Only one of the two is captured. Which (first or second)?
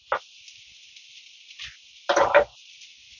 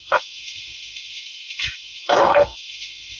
first